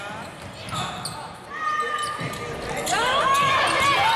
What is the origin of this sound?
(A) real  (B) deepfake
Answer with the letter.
A